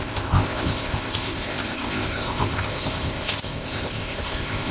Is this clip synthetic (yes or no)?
yes